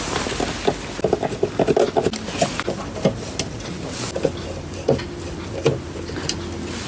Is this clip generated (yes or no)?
no